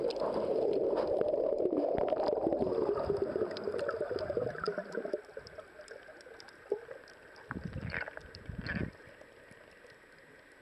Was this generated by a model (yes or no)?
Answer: no